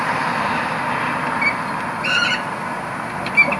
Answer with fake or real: real